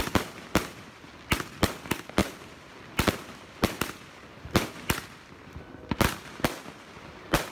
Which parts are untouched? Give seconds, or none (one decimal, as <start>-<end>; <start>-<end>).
0.0-7.5